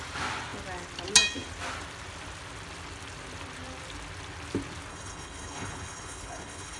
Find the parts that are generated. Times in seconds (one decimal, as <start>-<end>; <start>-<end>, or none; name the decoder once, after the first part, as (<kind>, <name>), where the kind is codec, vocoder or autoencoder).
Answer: 4.9-6.8 (codec, HILCodec)